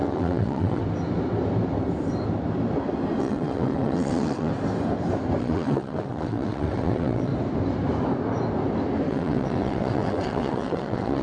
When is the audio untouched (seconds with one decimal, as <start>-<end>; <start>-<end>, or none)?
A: 0.8-3.2; 4.5-5.4; 7.3-9.1